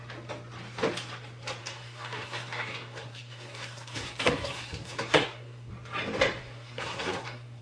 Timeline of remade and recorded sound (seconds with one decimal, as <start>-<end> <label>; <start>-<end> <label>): 0.0-1.6 recorded; 1.6-5.7 remade; 5.7-6.4 recorded; 6.4-7.6 remade